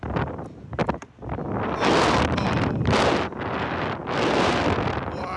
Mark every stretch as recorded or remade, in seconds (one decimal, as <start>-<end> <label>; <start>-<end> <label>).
0.0-5.4 recorded